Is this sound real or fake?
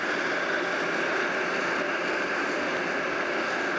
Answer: real